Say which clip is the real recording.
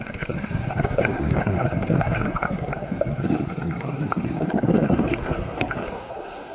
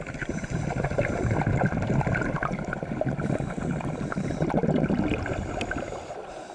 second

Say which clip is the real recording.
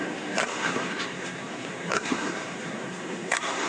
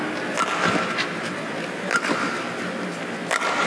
second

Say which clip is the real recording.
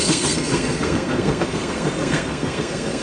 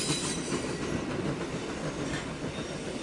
second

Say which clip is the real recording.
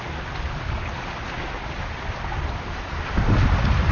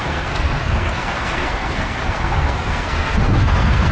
first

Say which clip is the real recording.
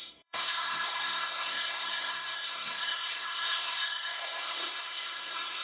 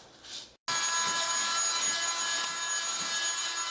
second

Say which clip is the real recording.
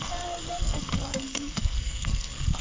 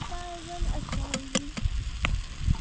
second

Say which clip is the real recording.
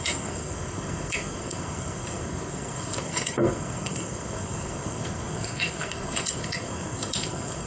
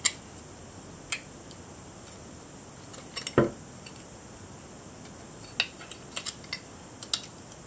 second